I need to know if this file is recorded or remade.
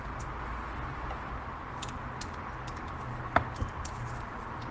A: recorded